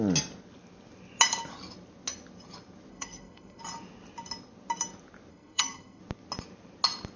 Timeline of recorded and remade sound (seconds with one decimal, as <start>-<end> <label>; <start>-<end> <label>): 0.0-2.9 recorded; 2.9-3.6 remade; 3.6-5.3 recorded; 5.3-6.0 remade; 6.0-7.2 recorded